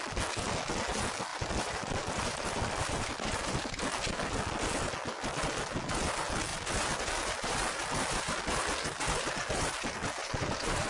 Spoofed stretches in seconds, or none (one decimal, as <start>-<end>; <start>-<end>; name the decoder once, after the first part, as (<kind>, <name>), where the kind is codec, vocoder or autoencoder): 1.3-3.7 (vocoder, BigVGAN v2); 6.5-8.4; 10.2-10.9